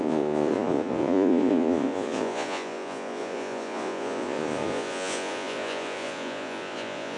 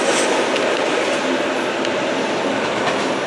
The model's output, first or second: first